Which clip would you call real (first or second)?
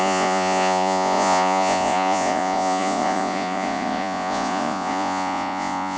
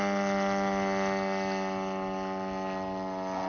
second